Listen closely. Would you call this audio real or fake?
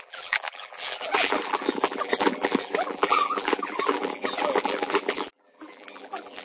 fake